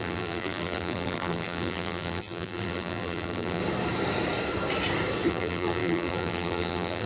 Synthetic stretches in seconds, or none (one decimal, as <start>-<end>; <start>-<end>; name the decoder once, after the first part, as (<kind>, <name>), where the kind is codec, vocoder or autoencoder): 0.0-3.6 (vocoder, BigVGAN v2); 5.3-7.1